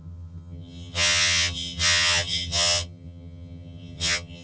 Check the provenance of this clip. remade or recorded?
remade